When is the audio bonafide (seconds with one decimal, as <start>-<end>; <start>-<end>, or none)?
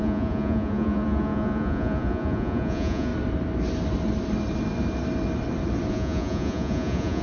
3.1-5.9